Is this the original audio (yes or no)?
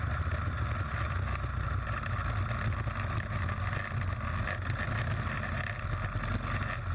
yes